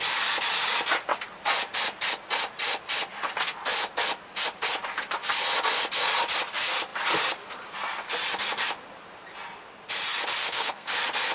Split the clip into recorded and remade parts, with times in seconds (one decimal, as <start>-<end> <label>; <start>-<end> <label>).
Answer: 0.0-10.4 recorded; 10.4-10.9 remade; 10.9-11.3 recorded